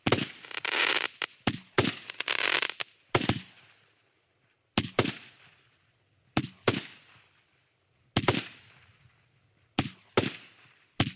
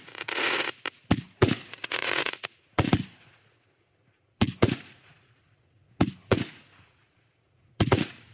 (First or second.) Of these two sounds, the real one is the first